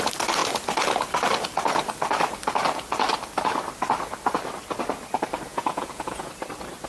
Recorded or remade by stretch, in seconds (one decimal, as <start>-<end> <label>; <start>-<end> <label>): 0.0-5.5 recorded; 5.5-6.3 remade; 6.3-6.9 recorded